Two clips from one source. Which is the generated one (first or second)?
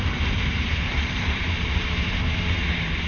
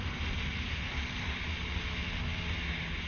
first